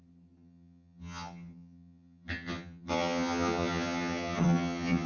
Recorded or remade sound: remade